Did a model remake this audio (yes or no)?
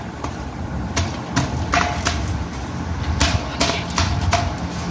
no